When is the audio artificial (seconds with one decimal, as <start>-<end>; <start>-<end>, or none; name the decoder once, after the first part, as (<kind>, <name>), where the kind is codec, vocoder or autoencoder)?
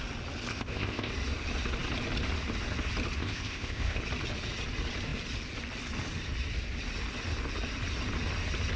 0.5-1.1 (codec, ZipCodec); 3.2-4.0